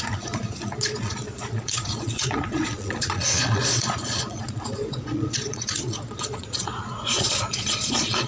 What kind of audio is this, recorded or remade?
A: remade